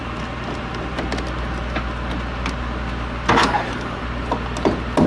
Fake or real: real